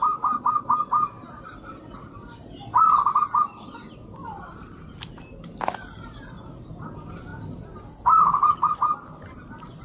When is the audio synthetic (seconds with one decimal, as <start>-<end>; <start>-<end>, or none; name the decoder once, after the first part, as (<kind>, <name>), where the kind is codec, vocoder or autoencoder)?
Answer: none